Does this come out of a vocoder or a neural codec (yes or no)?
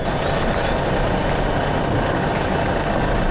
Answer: no